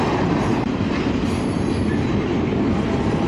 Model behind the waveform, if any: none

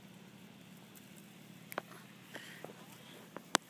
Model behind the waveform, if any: none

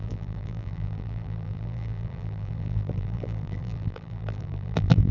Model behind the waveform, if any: vocoder, BigVGAN v2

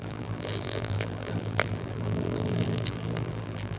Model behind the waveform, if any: vocoder, BigVGAN v2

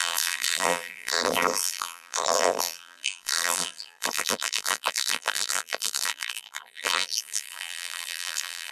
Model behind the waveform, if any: vocoder, BigVGAN v2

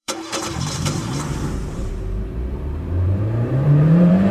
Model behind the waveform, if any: vocoder, BigVGAN v2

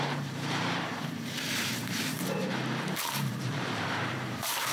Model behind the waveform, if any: vocoder, BigVGAN v2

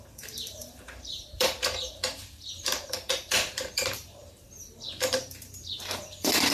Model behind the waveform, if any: vocoder, BigVGAN v2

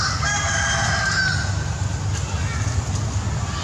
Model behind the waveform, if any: none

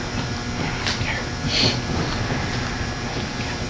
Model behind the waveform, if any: none